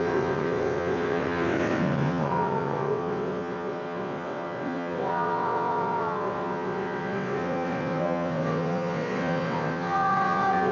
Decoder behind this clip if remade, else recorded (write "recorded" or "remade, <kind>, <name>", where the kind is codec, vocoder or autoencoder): remade, vocoder, WaveNeXt